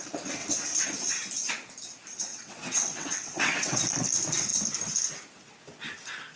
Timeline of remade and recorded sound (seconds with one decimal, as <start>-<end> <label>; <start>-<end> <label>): 0.0-2.3 recorded; 2.3-3.8 remade; 3.8-6.4 recorded